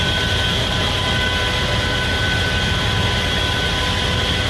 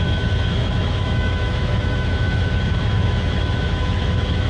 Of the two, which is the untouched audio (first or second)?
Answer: first